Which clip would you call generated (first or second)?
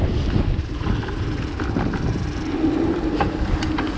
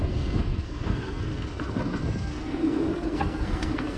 second